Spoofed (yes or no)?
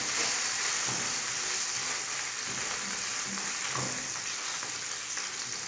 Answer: no